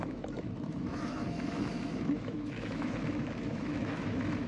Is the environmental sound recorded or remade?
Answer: remade